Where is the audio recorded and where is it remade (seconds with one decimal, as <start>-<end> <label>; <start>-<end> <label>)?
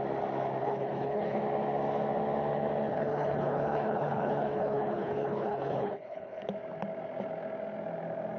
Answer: 0.0-0.6 recorded; 0.6-1.4 remade; 1.4-2.9 recorded; 2.9-6.5 remade; 6.5-8.4 recorded